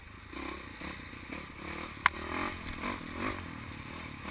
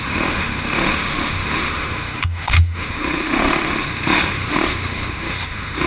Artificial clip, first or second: second